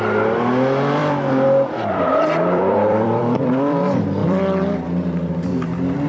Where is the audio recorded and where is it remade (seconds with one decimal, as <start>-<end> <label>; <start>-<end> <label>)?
0.0-1.0 recorded; 1.0-3.8 remade; 3.8-4.2 recorded; 4.2-5.3 remade; 5.3-6.1 recorded